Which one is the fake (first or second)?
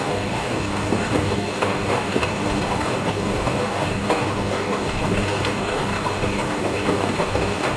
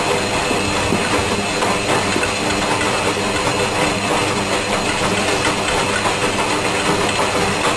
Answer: first